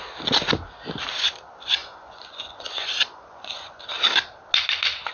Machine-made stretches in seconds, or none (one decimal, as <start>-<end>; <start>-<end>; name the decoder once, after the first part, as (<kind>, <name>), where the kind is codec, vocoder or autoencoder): 1.8-3.8 (vocoder, Vocos)